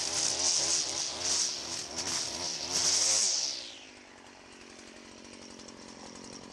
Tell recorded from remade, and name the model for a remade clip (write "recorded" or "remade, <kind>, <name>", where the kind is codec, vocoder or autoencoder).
recorded